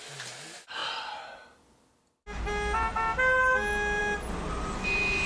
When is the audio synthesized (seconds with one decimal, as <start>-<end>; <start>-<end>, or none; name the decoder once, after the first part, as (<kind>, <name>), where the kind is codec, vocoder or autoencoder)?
none